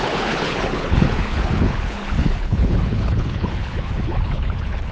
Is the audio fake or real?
fake